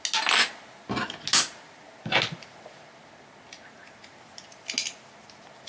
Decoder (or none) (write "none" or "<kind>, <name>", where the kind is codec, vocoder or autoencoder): none